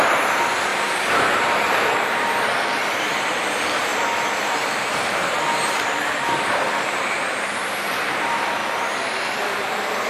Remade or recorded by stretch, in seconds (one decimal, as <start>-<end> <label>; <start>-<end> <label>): 0.0-3.9 remade; 3.9-4.4 recorded; 4.4-8.6 remade; 8.6-9.4 recorded; 9.4-10.1 remade